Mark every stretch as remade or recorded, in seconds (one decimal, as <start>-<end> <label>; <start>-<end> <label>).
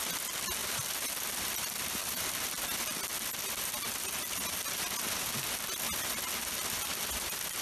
0.0-2.0 recorded; 2.0-2.5 remade; 2.5-7.6 recorded